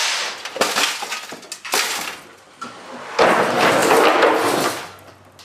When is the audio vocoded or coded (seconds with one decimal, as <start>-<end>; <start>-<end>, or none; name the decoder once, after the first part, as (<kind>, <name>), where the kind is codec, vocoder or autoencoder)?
none